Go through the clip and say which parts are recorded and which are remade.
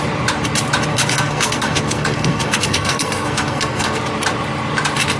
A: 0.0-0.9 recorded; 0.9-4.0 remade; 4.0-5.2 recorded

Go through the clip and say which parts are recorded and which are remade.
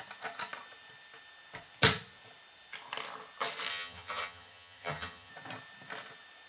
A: 0.0-3.7 recorded; 3.7-5.3 remade; 5.3-6.5 recorded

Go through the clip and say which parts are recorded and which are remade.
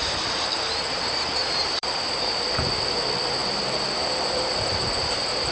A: 0.0-1.4 recorded; 1.4-3.0 remade; 3.0-3.4 recorded; 3.4-5.5 remade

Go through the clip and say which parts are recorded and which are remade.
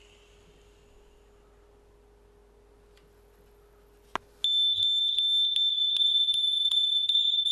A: 0.0-5.7 recorded; 5.7-7.5 remade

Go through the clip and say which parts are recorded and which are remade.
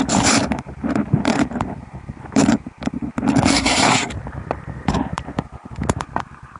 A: 0.0-3.5 recorded; 3.5-4.1 remade; 4.1-6.6 recorded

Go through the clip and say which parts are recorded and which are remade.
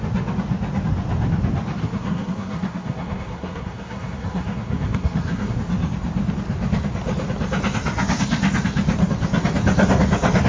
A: 0.0-1.8 recorded; 1.8-5.6 remade; 5.6-10.5 recorded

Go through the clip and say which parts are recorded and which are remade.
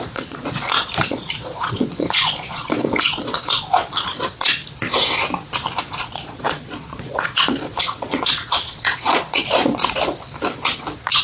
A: 0.0-4.6 remade; 4.6-5.9 recorded; 5.9-9.8 remade; 9.8-10.6 recorded; 10.6-11.2 remade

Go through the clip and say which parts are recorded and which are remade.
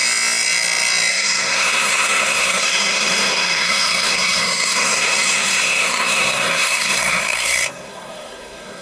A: 0.0-1.1 recorded; 1.1-8.8 remade